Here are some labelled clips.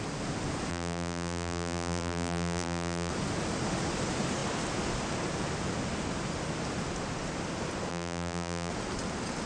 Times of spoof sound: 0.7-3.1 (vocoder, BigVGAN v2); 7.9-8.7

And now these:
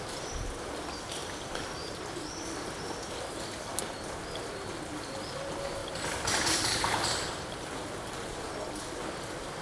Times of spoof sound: 1.2-2.0 (vocoder, BigVGAN v2); 5.8-8.1

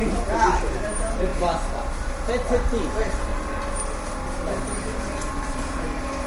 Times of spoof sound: 0.0-1.3 (vocoder, BigVGAN v2); 2.8-3.3; 5.3-6.3

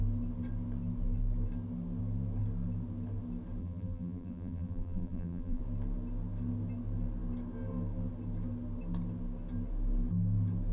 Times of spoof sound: 3.6-5.6 (vocoder, BigVGAN v2)

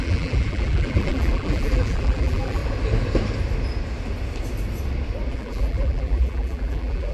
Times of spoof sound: 0.0-2.6 (vocoder, BigVGAN v2); 5.3-7.1

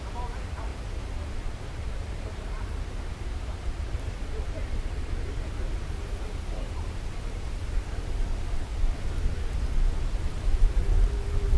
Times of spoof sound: 0.0-8.7 (vocoder, BigVGAN v2)